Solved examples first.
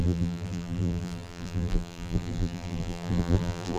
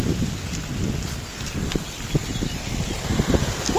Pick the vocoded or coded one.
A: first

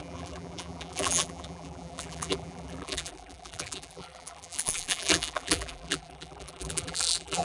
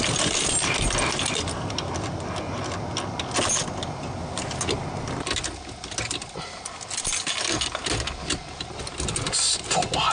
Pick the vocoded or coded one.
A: first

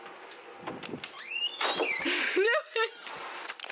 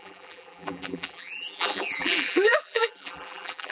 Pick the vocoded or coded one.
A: second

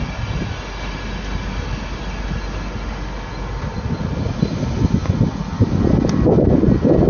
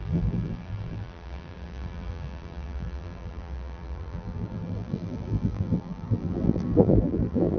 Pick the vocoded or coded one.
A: second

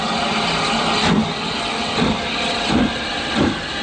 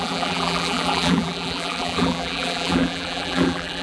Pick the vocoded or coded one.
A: second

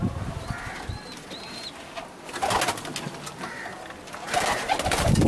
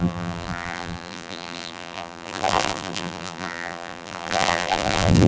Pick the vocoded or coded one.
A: second